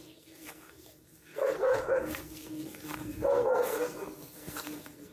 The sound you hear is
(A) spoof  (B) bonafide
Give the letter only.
A